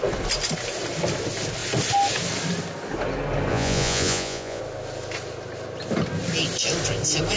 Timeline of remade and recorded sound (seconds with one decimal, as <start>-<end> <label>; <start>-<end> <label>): 0.0-3.5 recorded; 3.5-4.6 remade; 4.6-7.4 recorded